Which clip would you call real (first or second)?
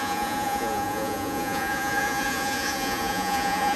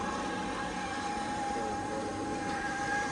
second